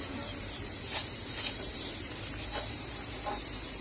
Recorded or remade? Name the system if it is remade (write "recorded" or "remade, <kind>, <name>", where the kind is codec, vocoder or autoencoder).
remade, vocoder, BigVGAN v2